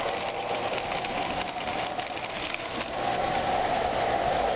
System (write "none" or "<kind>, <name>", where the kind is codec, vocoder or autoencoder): none